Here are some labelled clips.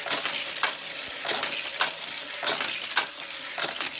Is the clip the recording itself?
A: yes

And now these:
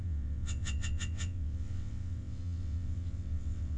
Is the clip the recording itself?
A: no